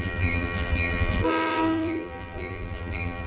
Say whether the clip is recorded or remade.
remade